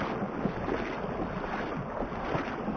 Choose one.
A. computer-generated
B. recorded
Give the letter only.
B